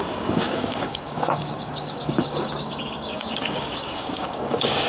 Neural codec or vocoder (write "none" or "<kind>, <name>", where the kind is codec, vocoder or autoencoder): codec, DAC